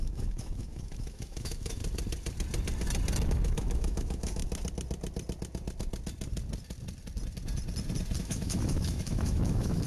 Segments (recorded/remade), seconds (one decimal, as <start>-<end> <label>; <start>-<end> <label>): 0.0-1.8 remade; 1.8-3.3 recorded; 3.3-4.4 remade; 4.4-8.2 recorded; 8.2-9.9 remade